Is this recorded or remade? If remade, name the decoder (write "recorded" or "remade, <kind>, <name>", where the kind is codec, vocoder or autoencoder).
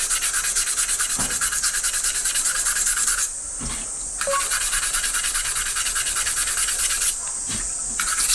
recorded